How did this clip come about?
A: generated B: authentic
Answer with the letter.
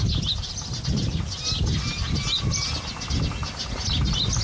B